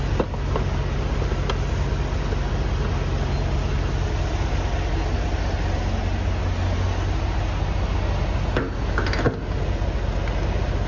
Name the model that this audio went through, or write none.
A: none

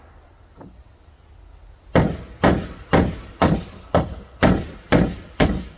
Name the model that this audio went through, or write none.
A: none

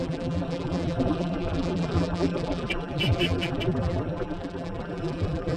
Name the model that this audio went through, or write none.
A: vocoder, BigVGAN v2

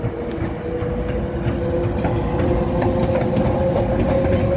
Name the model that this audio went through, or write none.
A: none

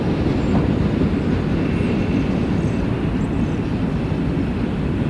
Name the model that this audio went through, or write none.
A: none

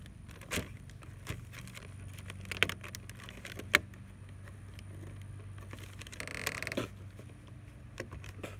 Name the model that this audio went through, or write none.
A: none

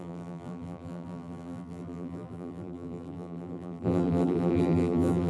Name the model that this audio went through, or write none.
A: vocoder, BigVGAN v2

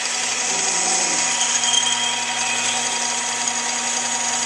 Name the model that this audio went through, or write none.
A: none